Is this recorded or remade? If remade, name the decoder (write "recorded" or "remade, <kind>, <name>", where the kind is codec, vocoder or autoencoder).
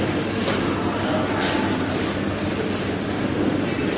recorded